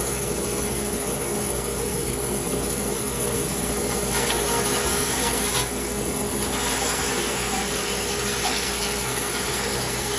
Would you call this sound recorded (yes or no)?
no